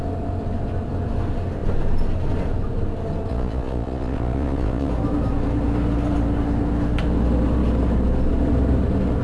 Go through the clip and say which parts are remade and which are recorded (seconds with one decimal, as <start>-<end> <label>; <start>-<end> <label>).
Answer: 0.0-3.3 recorded; 3.3-4.9 remade; 4.9-9.2 recorded